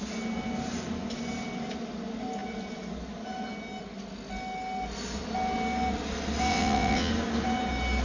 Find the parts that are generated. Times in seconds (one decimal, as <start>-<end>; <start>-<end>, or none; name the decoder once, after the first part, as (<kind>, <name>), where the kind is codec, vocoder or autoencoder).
6.5-7.1 (vocoder, WaveNeXt)